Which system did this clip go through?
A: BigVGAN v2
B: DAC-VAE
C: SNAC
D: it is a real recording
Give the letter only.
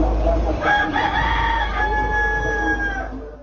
D